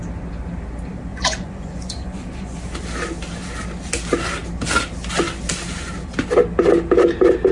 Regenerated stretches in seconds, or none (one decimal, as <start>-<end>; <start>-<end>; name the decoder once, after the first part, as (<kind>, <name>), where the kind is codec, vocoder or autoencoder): 1.1-2.6 (vocoder, Vocos)